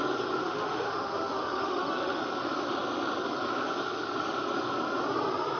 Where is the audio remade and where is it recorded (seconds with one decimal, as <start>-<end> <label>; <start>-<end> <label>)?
0.0-0.4 recorded; 0.4-2.2 remade; 2.2-5.6 recorded